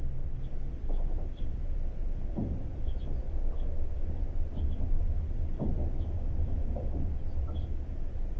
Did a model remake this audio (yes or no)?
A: no